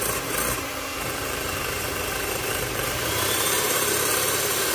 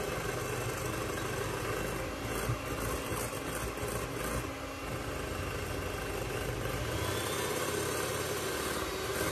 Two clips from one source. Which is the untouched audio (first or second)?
second